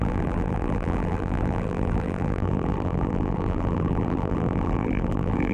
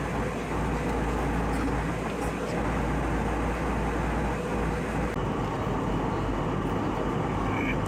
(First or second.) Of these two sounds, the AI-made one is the first